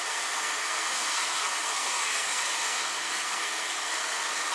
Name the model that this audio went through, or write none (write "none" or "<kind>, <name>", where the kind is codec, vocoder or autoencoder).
codec, SNAC